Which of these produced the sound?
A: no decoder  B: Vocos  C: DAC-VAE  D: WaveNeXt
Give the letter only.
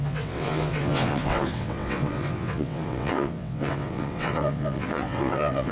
D